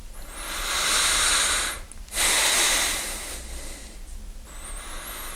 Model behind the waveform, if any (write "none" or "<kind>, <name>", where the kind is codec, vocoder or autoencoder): none